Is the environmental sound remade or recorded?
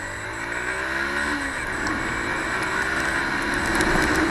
recorded